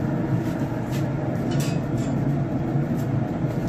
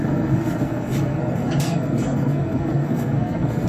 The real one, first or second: first